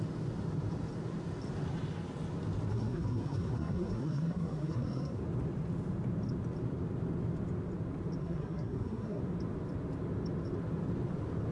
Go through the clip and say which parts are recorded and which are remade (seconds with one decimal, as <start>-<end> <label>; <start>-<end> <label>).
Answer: 0.0-2.7 recorded; 2.7-5.2 remade; 5.2-8.2 recorded; 8.2-9.2 remade; 9.2-11.5 recorded

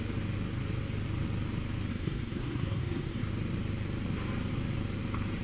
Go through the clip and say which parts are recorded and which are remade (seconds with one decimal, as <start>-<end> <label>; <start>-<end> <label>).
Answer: 0.0-1.9 recorded; 1.9-3.3 remade; 3.3-5.4 recorded

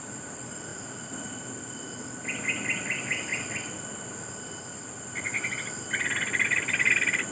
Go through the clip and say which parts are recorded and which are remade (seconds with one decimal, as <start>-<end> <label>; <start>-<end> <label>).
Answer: 0.0-7.3 recorded

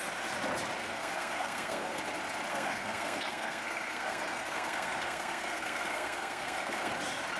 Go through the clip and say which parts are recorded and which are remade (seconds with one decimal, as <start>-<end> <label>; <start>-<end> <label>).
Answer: 0.0-0.8 recorded; 0.8-2.0 remade; 2.0-2.5 recorded; 2.5-6.9 remade; 6.9-7.4 recorded

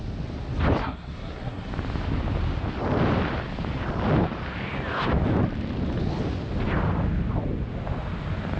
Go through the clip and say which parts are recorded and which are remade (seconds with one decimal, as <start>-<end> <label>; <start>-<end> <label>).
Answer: 0.0-0.8 recorded; 0.8-1.7 remade; 1.7-8.6 recorded

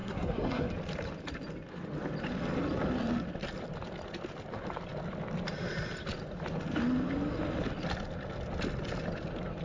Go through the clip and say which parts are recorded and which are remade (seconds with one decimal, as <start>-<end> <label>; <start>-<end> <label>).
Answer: 0.0-0.7 remade; 0.7-9.6 recorded

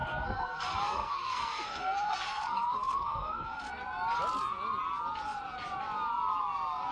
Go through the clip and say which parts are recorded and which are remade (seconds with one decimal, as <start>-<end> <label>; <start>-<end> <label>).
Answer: 0.0-3.7 remade; 3.7-6.9 recorded